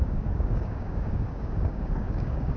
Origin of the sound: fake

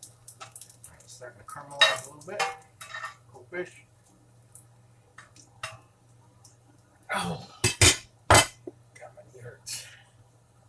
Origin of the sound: real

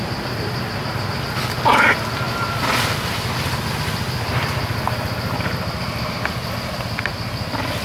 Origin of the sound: real